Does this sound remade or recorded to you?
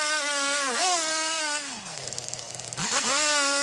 remade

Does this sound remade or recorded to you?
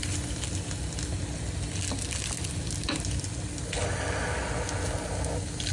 recorded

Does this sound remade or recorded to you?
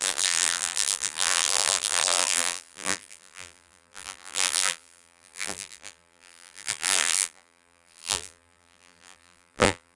remade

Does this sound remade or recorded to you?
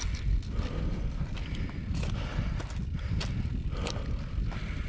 recorded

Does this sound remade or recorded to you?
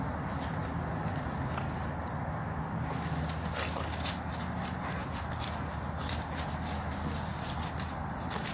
recorded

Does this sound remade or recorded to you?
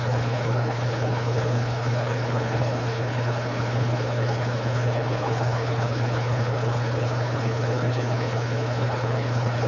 remade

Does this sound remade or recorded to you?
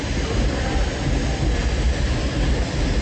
recorded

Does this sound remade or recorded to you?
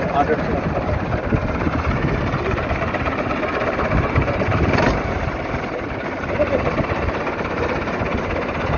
remade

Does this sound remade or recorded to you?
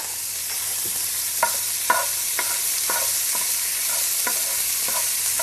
recorded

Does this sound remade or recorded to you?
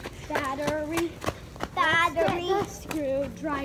recorded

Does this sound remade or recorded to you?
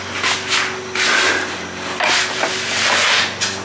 recorded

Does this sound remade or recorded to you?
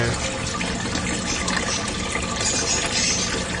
recorded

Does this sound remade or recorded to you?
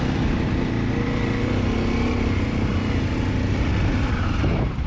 recorded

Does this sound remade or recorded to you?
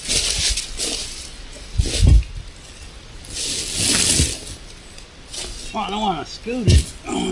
recorded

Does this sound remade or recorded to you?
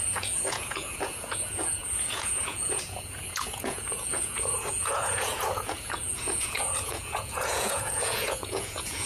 remade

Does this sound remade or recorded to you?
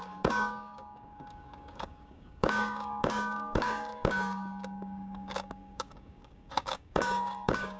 remade